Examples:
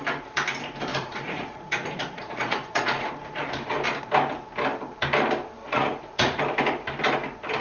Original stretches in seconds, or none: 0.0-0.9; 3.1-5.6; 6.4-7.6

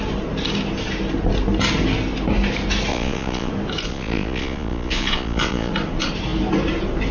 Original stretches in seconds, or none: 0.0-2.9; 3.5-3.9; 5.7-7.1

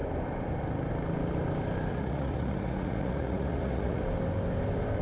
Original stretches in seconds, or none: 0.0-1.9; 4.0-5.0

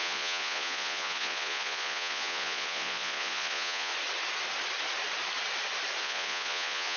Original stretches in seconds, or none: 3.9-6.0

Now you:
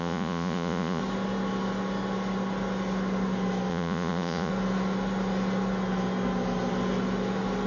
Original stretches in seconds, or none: 1.0-3.7; 4.5-7.7

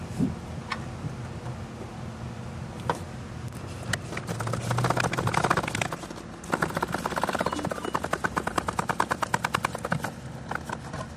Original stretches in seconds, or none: 0.0-11.2

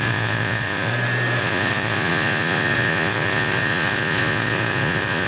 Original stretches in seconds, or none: 0.9-1.4